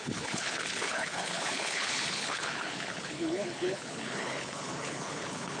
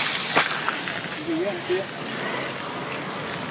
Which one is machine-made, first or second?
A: first